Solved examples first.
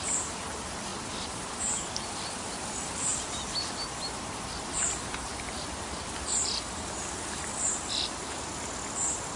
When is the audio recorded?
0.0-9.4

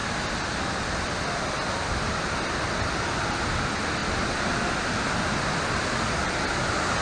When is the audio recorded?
0.0-7.0

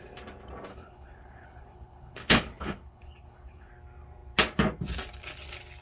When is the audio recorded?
0.0-0.7; 3.7-5.8

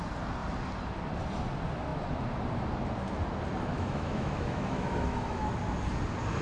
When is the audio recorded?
0.0-3.7; 5.5-6.4

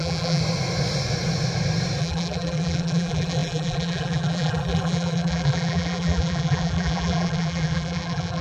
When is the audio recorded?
0.4-2.0

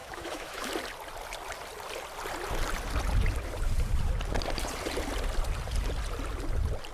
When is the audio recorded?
0.7-6.9

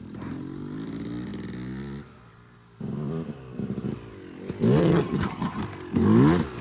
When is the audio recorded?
0.0-4.8; 5.6-6.6